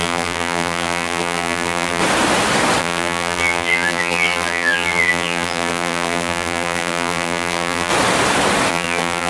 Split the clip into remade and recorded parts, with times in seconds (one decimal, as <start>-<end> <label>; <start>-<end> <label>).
0.0-2.0 remade; 2.0-2.8 recorded; 2.8-7.9 remade; 7.9-8.7 recorded; 8.7-9.3 remade